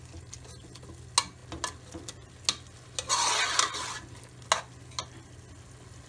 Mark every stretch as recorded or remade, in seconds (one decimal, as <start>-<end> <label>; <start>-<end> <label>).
0.0-6.1 recorded